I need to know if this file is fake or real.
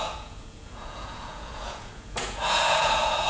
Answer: fake